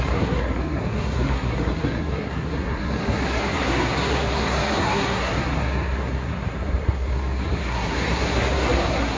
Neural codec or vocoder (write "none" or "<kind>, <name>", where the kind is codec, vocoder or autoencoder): codec, SNAC